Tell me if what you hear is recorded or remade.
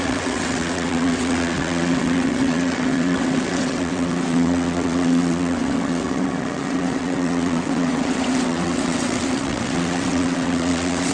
remade